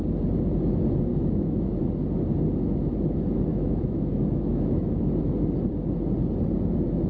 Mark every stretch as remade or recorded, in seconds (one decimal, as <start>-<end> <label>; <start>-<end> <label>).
0.0-1.1 recorded; 1.1-1.8 remade; 1.8-3.5 recorded; 3.5-5.0 remade; 5.0-7.1 recorded